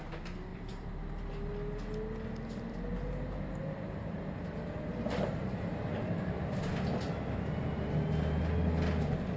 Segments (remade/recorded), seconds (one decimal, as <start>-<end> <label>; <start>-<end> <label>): 0.0-0.5 recorded; 0.5-1.5 remade; 1.5-3.6 recorded; 3.6-6.7 remade; 6.7-9.4 recorded